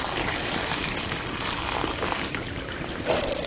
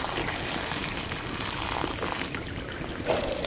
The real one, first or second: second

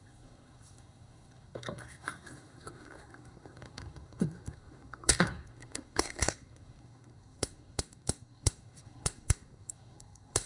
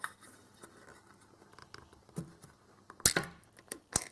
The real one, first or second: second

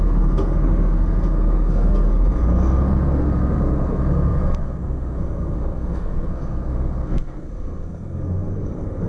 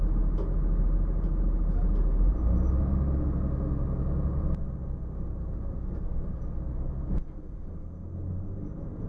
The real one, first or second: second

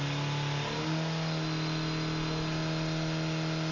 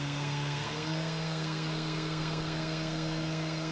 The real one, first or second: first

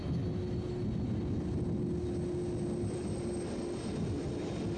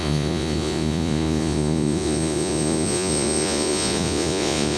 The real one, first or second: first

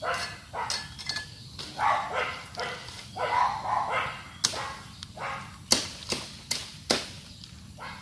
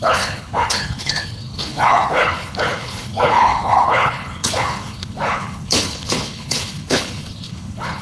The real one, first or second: first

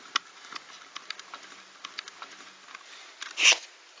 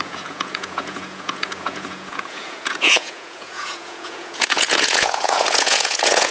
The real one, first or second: first